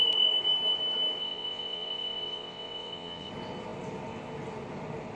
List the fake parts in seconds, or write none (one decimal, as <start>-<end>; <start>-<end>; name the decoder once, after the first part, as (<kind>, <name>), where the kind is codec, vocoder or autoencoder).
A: 1.2-3.3 (vocoder, WaveNeXt)